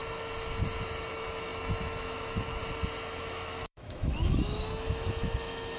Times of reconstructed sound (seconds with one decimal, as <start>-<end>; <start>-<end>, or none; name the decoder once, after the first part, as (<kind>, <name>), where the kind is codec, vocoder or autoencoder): 1.1-2.6 (autoencoder, DAC-VAE); 3.2-5.8